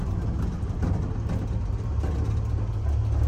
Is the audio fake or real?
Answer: real